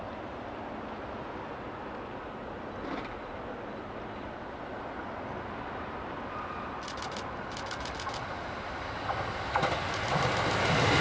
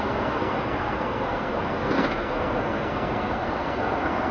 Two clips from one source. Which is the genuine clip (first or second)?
first